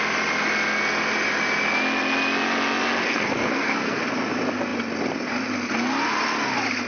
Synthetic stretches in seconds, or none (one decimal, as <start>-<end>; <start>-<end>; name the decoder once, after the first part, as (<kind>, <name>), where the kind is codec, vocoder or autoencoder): 3.0-4.0 (codec, SNAC)